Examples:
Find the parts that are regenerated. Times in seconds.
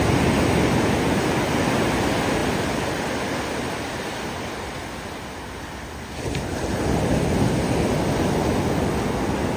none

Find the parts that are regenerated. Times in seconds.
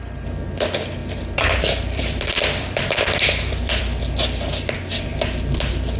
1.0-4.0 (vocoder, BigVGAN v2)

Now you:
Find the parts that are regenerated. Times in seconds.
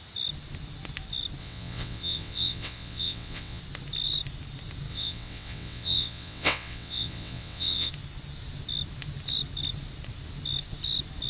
1.4-3.6 (vocoder, WaveNeXt); 4.9-7.9